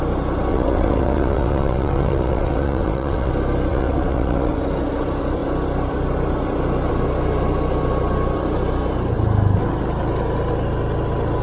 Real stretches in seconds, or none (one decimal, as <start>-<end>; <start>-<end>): 0.0-0.5; 3.3-3.7; 4.6-11.4